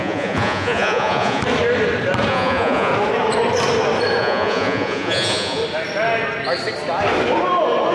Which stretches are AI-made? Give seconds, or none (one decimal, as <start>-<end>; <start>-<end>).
0.0-1.4; 2.3-2.9; 4.2-5.6